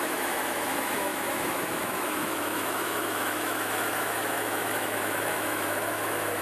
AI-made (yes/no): yes